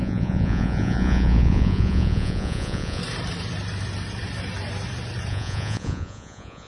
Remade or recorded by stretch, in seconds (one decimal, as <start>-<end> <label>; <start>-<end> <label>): 0.0-3.0 remade; 3.0-5.3 recorded; 5.3-6.7 remade